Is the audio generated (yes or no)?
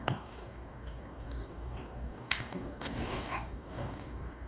yes